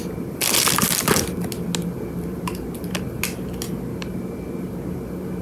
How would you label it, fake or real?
real